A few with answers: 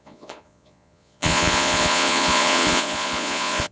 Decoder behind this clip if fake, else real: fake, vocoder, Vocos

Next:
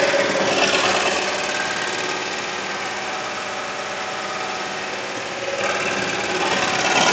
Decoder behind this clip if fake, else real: real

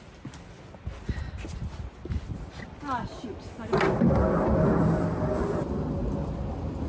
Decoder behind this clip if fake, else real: real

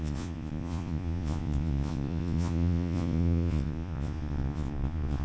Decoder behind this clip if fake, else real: fake, vocoder, Vocos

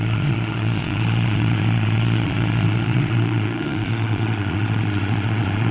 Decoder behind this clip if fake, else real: fake, vocoder, Vocos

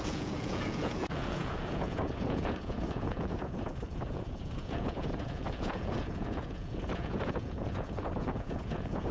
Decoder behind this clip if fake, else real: fake, vocoder, Vocos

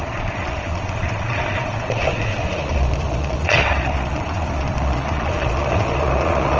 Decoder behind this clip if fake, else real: fake, vocoder, Vocos